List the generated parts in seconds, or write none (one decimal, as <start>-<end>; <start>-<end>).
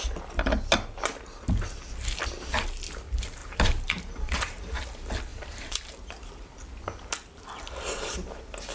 3.4-4.6; 5.3-6.3